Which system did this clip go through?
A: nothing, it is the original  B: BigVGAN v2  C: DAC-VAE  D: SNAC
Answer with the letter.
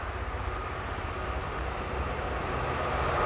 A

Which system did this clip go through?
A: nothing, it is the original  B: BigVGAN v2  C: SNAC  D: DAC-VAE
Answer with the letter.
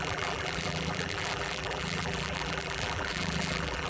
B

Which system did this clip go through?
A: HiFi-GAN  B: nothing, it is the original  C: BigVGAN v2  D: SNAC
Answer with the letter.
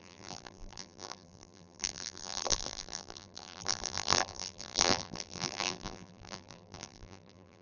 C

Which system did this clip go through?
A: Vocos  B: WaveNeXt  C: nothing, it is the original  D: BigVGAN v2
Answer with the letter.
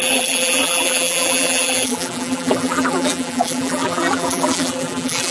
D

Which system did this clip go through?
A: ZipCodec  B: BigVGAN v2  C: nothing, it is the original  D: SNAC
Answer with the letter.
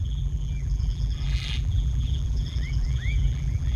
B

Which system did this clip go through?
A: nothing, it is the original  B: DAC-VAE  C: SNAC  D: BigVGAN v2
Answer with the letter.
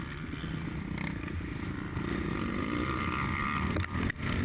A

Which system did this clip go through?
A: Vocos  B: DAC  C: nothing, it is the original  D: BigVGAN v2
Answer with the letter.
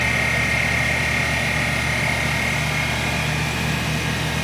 C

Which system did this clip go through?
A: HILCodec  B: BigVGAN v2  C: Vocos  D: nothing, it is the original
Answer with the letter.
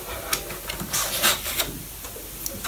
D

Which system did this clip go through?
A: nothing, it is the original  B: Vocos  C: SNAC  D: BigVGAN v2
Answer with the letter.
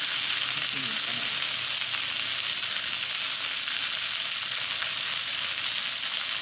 A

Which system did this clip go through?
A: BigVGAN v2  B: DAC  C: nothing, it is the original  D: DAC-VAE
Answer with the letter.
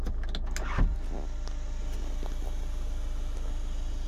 C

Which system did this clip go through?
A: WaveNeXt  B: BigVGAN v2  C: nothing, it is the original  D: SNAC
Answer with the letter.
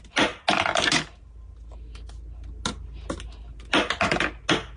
C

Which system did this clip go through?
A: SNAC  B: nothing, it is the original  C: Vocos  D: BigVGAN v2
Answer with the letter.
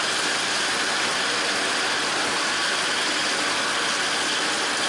B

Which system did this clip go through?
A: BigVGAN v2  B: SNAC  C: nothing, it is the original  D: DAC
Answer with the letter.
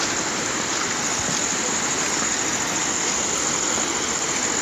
C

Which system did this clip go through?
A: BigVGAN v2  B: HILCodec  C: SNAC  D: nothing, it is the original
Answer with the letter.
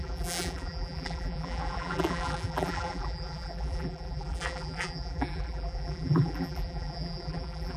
A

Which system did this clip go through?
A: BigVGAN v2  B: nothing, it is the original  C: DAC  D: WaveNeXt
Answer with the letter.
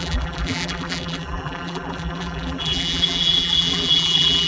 A